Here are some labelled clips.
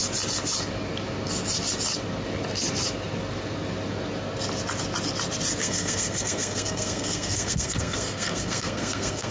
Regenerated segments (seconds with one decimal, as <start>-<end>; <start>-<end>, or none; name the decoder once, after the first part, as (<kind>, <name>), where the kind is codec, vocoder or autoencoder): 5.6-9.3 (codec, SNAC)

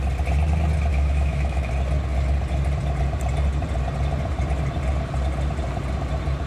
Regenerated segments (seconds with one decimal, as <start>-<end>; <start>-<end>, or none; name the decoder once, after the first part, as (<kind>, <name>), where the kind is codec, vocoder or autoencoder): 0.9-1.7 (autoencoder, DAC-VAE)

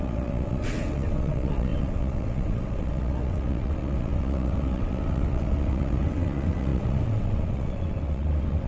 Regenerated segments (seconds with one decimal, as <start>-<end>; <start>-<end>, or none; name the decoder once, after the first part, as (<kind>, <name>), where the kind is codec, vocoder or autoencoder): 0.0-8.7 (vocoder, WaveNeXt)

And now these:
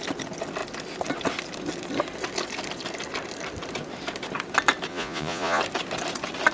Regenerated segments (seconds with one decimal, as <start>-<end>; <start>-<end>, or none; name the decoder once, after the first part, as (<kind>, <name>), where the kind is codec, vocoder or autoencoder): 4.9-5.6 (vocoder, Vocos)

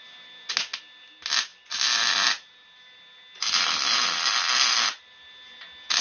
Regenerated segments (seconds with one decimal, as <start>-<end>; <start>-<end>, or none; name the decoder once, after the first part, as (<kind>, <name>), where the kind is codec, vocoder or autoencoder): none

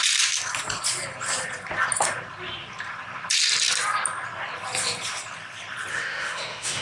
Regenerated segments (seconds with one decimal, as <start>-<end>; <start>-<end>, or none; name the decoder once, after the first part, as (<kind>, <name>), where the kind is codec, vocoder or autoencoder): 5.9-6.8 (autoencoder, DAC-VAE)